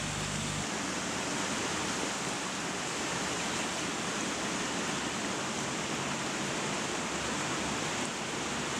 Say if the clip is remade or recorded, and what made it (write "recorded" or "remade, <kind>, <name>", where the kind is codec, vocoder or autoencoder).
recorded